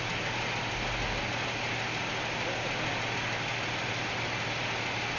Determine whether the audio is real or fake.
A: real